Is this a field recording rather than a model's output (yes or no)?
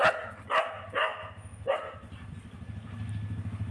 yes